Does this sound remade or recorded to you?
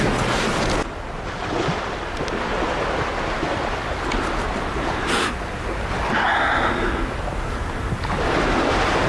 recorded